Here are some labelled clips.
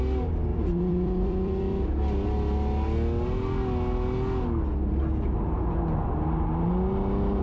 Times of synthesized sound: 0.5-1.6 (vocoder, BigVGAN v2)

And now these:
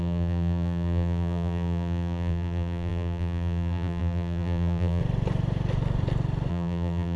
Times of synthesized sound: 0.0-5.0 (vocoder, BigVGAN v2); 6.5-7.2